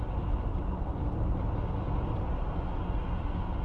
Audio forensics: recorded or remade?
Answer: recorded